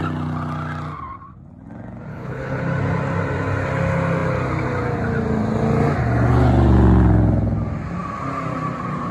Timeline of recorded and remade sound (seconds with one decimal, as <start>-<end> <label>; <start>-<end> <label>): 0.0-2.1 recorded; 2.1-2.6 remade; 2.6-9.1 recorded